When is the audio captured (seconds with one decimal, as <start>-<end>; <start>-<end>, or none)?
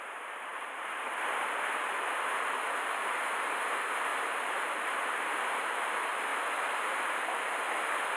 0.0-0.5; 1.2-8.2